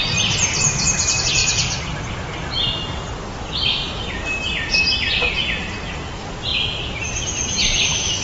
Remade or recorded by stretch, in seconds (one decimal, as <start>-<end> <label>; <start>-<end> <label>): 0.0-8.2 recorded